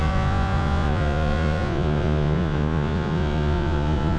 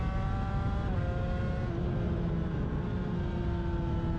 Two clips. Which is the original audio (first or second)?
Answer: second